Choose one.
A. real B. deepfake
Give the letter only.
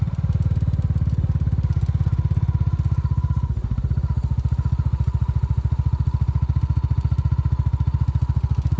A